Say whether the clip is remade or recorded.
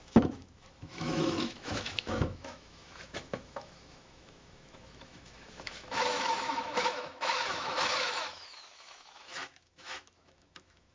remade